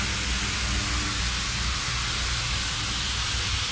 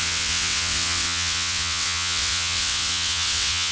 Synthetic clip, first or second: second